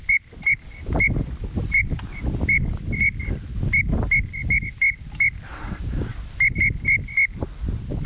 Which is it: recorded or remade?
recorded